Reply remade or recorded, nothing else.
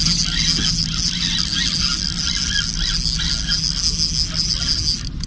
recorded